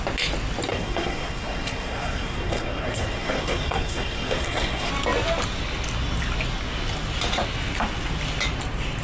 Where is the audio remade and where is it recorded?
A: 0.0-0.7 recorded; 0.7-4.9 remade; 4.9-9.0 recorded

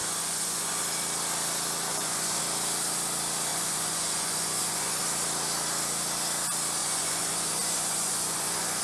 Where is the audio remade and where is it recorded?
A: 0.0-0.8 remade; 0.8-1.9 recorded; 1.9-2.4 remade; 2.4-3.5 recorded; 3.5-5.0 remade; 5.0-6.8 recorded; 6.8-8.8 remade

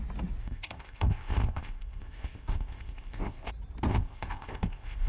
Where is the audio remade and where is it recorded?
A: 0.0-0.4 recorded; 0.4-3.5 remade; 3.5-3.9 recorded; 3.9-5.1 remade

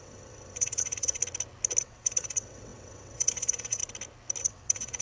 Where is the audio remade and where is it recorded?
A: 0.0-1.2 remade; 1.2-1.8 recorded; 1.8-3.8 remade; 3.8-4.4 recorded; 4.4-5.0 remade

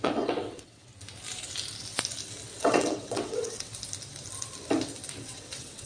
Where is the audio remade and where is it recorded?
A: 0.0-0.9 remade; 0.9-2.6 recorded; 2.6-3.7 remade; 3.7-5.2 recorded; 5.2-5.9 remade

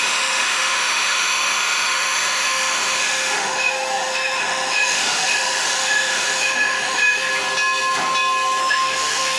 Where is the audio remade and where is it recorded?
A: 0.0-7.3 remade; 7.3-8.6 recorded; 8.6-9.4 remade